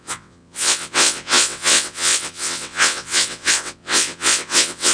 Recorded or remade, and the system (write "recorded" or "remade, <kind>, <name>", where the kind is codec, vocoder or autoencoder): remade, vocoder, WaveNeXt